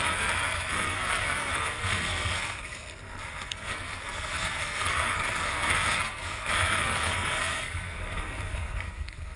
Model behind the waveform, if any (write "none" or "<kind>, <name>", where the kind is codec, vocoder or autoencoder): codec, SNAC